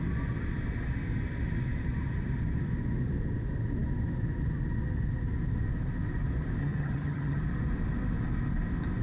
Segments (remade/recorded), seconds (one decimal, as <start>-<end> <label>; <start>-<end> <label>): 0.0-6.6 recorded; 6.6-7.4 remade; 7.4-9.0 recorded